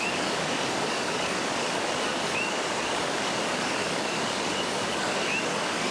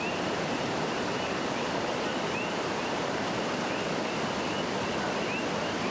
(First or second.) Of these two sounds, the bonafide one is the second